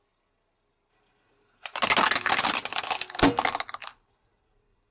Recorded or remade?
recorded